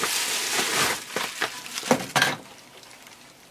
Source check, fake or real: fake